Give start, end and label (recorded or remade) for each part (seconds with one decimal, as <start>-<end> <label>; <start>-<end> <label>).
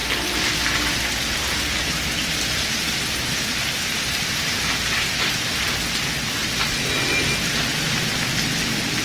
0.0-9.0 recorded